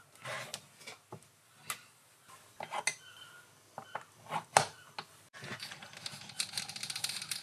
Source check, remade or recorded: recorded